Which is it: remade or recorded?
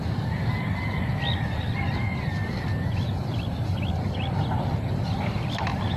recorded